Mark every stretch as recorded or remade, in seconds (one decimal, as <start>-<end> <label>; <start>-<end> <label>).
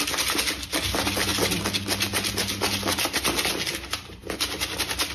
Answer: 0.0-5.1 recorded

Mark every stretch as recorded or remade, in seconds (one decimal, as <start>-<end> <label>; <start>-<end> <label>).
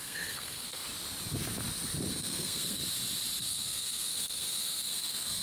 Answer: 0.0-0.8 remade; 0.8-2.1 recorded; 2.1-2.8 remade; 2.8-3.4 recorded; 3.4-5.4 remade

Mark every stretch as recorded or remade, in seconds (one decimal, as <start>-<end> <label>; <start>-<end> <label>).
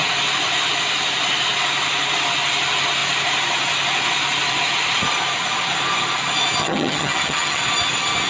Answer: 0.0-6.6 recorded; 6.6-7.6 remade; 7.6-8.3 recorded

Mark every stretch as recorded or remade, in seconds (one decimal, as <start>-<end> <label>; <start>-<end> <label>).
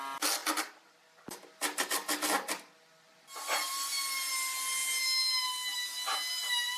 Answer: 0.0-6.8 recorded